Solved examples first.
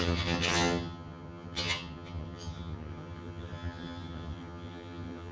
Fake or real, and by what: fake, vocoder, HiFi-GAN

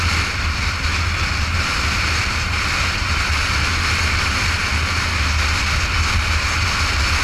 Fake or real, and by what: real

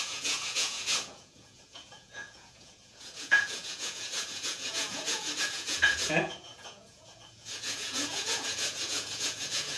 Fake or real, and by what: fake, vocoder, Vocos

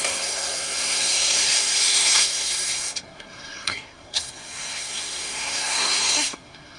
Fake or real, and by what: fake, codec, SNAC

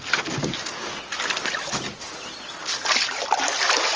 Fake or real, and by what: real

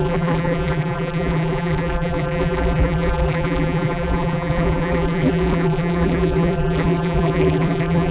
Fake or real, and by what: fake, vocoder, BigVGAN v2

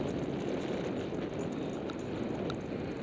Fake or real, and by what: real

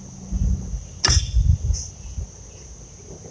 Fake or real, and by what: real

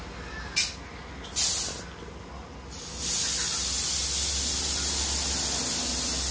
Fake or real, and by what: real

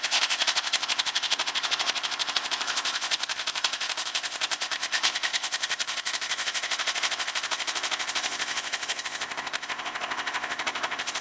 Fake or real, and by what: fake, codec, ZipCodec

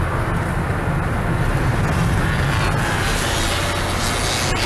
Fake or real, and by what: real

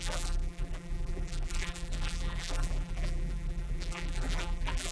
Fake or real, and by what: fake, vocoder, BigVGAN v2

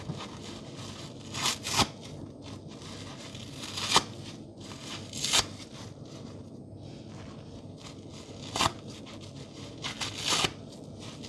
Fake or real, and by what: real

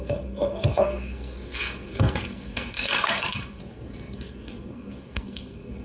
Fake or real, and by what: fake, codec, SNAC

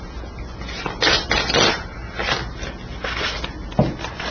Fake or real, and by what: real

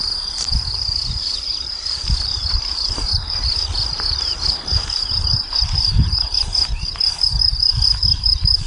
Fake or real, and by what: fake, vocoder, BigVGAN v2